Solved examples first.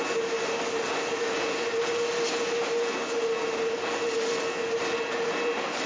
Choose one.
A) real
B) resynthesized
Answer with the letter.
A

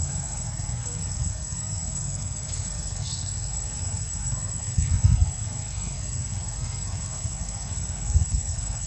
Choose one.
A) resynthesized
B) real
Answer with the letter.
A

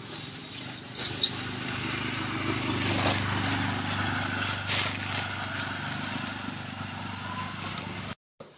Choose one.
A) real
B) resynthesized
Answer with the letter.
A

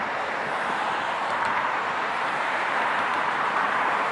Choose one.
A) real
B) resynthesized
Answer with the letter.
B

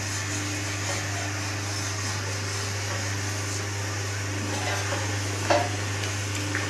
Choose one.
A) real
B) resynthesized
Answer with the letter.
A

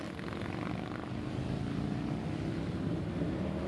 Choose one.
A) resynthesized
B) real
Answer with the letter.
B